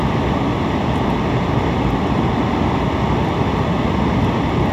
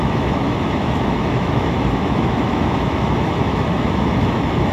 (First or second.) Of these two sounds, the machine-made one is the second